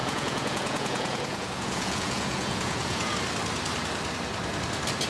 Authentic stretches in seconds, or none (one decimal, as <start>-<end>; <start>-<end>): 3.1-5.1